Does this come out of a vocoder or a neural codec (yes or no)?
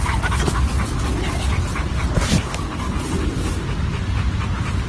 no